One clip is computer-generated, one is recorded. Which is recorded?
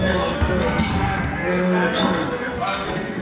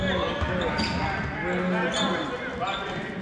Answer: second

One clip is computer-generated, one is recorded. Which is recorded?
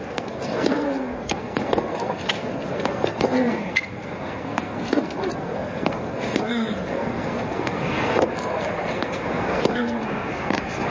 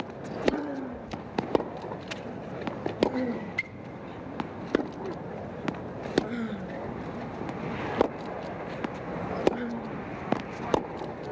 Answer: second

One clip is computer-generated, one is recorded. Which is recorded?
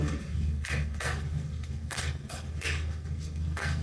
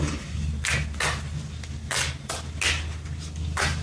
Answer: second